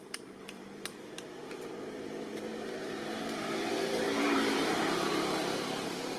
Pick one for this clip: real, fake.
fake